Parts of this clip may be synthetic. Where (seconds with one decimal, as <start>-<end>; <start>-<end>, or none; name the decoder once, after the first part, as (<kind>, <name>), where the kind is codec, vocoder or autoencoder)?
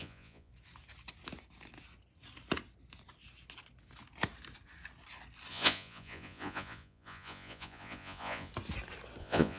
0.0-0.5 (vocoder, Vocos); 5.5-8.5; 9.2-9.6